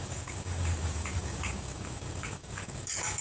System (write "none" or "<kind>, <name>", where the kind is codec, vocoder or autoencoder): codec, DAC